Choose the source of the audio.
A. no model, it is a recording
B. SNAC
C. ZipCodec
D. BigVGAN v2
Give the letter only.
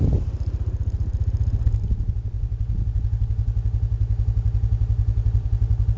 A